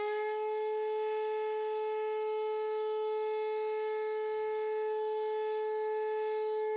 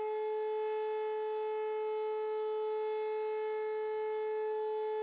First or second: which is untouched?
second